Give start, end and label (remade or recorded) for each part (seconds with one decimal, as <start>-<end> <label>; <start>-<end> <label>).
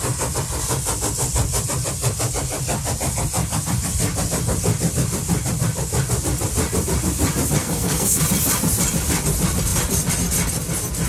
0.0-7.6 recorded; 7.6-8.2 remade; 8.2-11.1 recorded